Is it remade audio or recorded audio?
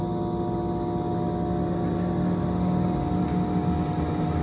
recorded